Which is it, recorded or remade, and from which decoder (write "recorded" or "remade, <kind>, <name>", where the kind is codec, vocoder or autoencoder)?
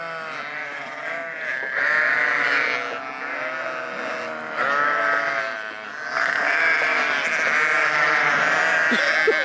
recorded